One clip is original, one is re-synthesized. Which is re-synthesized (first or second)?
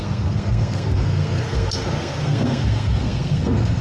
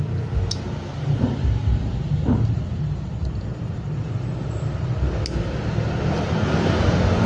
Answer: first